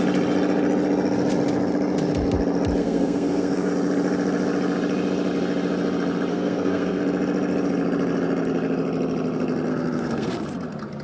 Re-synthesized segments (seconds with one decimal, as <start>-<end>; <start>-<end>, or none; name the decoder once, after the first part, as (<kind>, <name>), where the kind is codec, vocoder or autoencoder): 2.8-3.7 (codec, SNAC); 6.3-7.0; 9.7-10.3